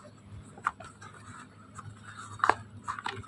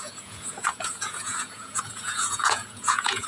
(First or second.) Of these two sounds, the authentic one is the first